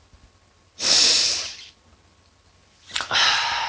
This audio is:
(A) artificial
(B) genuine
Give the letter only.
B